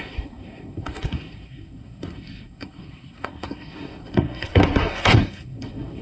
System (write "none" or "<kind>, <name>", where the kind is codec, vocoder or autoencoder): codec, SNAC